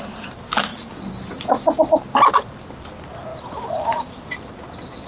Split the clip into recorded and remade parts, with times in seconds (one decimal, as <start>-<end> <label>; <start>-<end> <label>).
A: 0.0-5.1 recorded